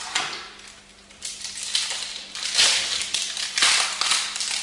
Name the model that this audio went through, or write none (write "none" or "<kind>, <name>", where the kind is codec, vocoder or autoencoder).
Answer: none